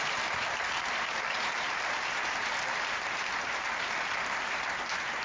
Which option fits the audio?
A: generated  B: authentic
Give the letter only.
A